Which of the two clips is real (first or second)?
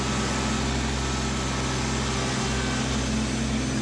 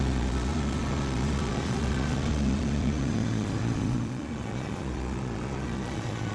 first